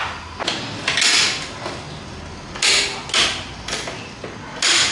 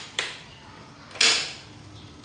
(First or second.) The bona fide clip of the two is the first